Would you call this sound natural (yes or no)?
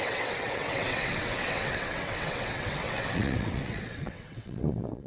no